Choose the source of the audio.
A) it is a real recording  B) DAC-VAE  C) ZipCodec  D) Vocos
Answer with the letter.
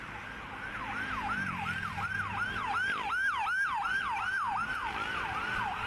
A